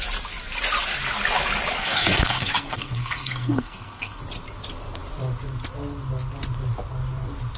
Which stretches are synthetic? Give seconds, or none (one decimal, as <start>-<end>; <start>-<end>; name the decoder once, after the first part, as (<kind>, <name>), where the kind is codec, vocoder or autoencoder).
1.8-4.2 (codec, SNAC)